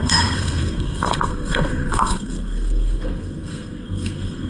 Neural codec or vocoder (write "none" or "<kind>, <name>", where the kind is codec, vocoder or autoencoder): codec, SNAC